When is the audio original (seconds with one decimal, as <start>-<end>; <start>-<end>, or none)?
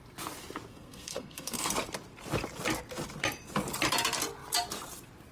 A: 0.0-0.7; 1.7-5.3